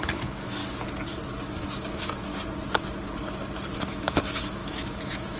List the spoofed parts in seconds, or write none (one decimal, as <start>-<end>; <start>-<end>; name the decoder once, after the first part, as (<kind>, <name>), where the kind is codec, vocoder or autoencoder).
0.0-0.6 (autoencoder, DAC-VAE); 1.6-2.3; 3.7-5.4